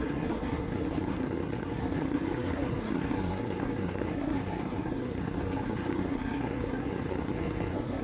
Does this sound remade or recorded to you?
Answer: remade